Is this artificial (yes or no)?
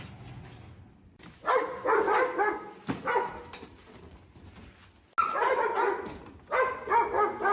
no